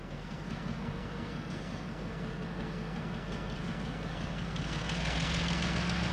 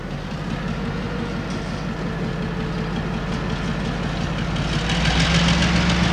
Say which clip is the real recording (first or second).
second